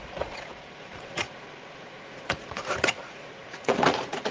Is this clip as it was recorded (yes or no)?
no